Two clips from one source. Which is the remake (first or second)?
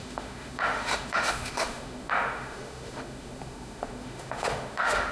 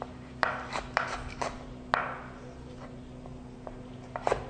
first